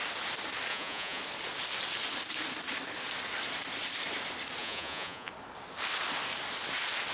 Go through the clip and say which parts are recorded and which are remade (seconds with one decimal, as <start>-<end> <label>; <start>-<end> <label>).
0.0-0.7 recorded; 0.7-1.2 remade; 1.2-4.6 recorded; 4.6-5.3 remade; 5.3-7.1 recorded